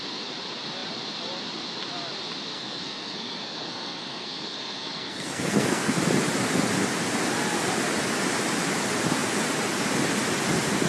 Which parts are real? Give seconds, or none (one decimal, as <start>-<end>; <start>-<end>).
0.0-2.5; 6.0-10.9